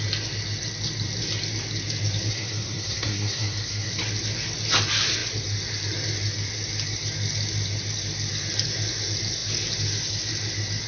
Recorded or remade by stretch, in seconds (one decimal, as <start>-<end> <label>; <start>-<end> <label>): 0.0-2.3 recorded; 2.3-3.9 remade; 3.9-10.9 recorded